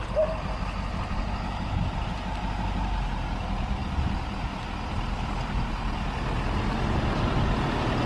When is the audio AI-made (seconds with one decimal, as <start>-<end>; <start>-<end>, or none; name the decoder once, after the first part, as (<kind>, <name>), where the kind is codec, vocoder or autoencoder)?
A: none